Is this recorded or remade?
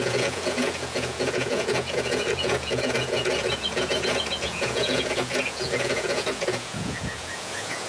remade